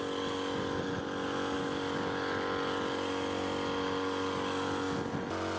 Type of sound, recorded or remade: recorded